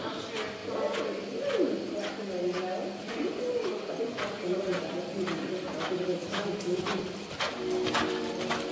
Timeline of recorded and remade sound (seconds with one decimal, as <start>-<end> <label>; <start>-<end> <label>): 0.0-6.1 recorded; 6.1-6.8 remade; 6.8-8.7 recorded